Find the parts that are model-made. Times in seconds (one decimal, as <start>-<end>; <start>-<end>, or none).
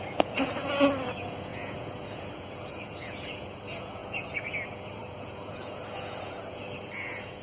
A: 0.0-7.4